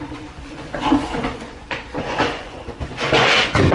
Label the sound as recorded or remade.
remade